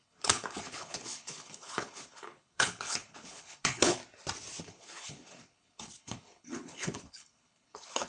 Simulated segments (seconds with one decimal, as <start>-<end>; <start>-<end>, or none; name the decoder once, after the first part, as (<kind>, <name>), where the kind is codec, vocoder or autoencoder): 0.0-4.0 (codec, HILCodec); 4.6-8.1